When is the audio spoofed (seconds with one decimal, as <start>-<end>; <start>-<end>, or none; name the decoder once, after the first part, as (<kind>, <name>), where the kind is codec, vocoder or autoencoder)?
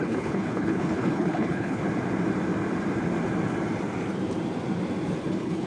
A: 0.0-1.8 (codec, HILCodec); 5.2-5.7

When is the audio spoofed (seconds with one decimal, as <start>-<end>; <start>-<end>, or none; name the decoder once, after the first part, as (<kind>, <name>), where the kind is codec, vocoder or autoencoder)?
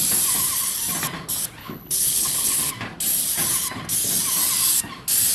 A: 1.6-2.7 (codec, HILCodec)